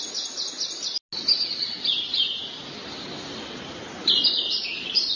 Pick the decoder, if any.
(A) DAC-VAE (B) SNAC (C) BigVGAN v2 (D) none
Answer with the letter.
D